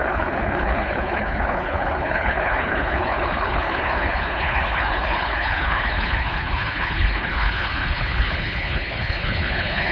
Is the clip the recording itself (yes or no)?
no